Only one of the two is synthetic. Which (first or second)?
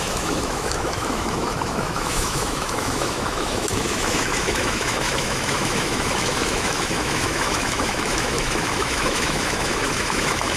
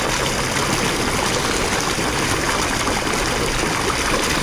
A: first